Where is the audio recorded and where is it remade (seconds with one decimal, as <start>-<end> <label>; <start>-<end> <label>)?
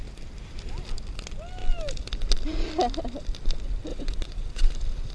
0.0-3.9 recorded; 3.9-4.6 remade; 4.6-5.1 recorded